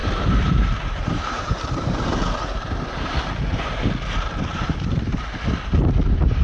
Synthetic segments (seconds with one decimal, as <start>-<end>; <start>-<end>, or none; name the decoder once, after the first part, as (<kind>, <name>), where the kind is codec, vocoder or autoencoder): 0.0-3.8 (vocoder, BigVGAN v2); 4.5-5.2